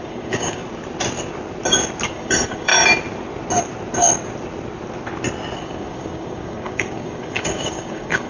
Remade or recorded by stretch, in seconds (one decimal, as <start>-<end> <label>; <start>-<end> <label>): 0.0-0.6 remade; 0.6-2.1 recorded; 2.1-2.7 remade; 2.7-5.6 recorded; 5.6-8.3 remade